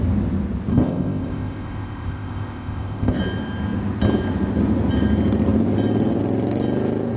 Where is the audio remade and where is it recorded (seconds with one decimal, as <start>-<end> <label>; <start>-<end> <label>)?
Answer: 0.0-0.7 recorded; 0.7-3.2 remade; 3.2-7.2 recorded